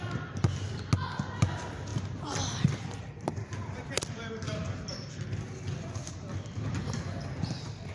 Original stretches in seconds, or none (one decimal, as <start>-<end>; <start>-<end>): 0.0-1.9; 5.1-7.9